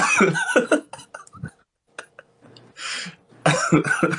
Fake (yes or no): no